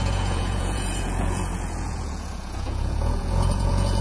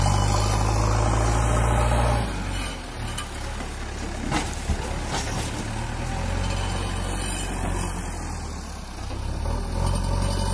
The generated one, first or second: first